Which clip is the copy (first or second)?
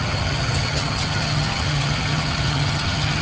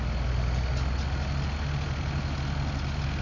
first